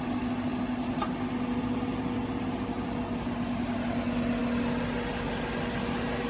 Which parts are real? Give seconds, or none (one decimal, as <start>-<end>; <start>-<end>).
0.0-6.3